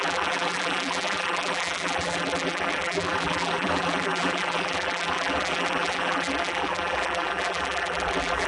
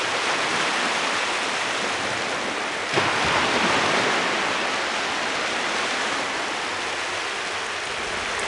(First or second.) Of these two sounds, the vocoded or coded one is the first